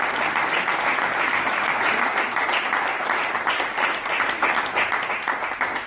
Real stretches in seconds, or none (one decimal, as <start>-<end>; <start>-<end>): 0.0-5.9